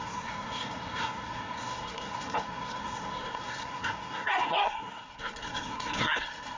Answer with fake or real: fake